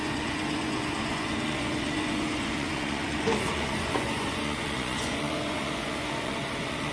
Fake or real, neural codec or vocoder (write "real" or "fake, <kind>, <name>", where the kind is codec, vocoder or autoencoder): fake, vocoder, Vocos